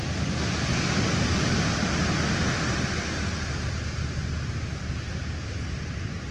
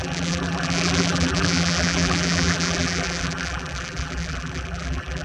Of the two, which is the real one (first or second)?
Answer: first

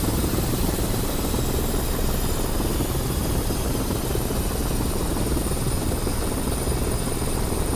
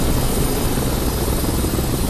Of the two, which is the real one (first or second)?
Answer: second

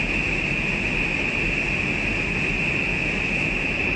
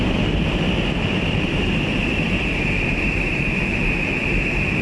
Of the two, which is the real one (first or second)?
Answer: first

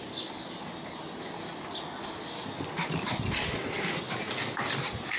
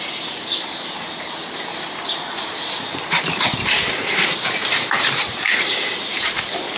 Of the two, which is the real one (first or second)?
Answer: first